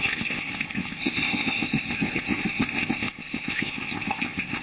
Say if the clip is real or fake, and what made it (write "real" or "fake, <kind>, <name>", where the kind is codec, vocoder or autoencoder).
fake, codec, ZipCodec